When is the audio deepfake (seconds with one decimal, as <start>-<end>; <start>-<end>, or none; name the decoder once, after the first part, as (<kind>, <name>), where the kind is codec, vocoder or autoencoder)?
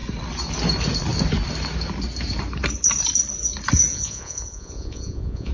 3.9-5.5 (vocoder, Vocos)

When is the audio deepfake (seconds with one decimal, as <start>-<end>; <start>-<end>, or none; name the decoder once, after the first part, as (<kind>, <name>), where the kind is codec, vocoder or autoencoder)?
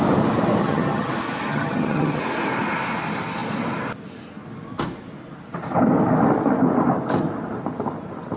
0.6-1.1 (vocoder, HiFi-GAN); 1.5-2.2